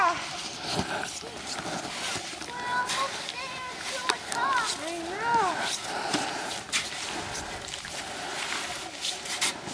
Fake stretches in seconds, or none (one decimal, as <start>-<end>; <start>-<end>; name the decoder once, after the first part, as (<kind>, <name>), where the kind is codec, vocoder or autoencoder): none